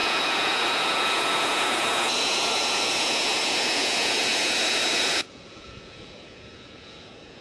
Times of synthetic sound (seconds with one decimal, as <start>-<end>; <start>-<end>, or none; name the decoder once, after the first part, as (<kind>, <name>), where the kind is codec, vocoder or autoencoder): 0.0-7.4 (vocoder, Vocos)